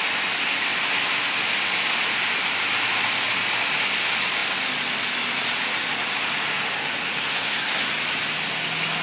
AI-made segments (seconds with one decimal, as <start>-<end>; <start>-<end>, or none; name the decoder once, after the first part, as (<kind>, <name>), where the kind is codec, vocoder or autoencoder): 7.3-7.9 (codec, SNAC)